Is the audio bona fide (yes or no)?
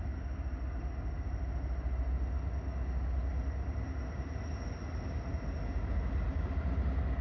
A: yes